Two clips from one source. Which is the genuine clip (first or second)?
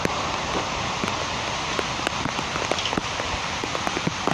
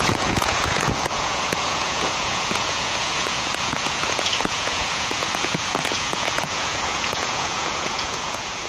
first